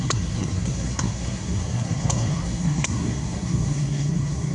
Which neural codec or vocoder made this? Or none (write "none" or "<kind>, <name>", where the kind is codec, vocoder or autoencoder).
codec, SNAC